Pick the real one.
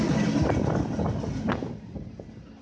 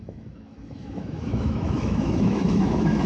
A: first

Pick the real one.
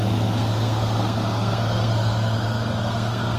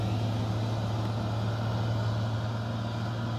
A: second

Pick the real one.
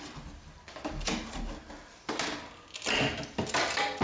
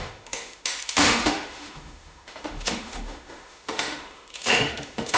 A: first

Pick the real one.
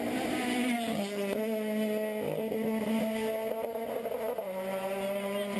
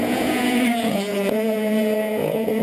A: first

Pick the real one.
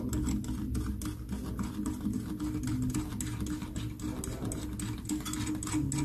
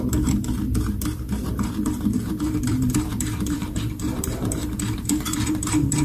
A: first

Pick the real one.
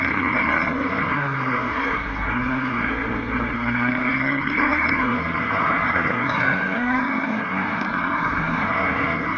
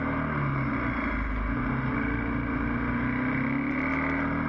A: second